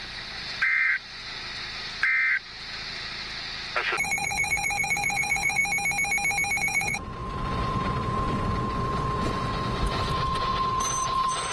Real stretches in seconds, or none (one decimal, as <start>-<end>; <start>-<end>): 1.2-4.0; 5.6-6.6

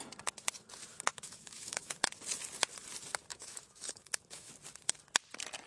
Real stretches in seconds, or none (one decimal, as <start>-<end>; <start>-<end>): 0.0-1.1; 1.9-3.3; 4.5-5.7